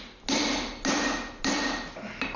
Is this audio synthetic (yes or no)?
no